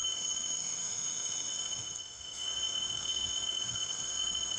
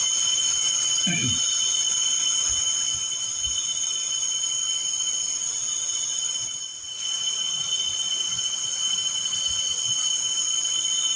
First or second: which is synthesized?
first